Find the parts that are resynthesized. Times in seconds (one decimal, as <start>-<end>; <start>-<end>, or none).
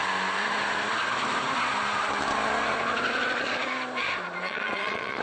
4.4-5.2